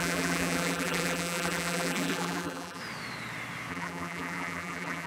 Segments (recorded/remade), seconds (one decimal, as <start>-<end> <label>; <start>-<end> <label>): 0.0-2.8 remade; 2.8-3.7 recorded; 3.7-5.1 remade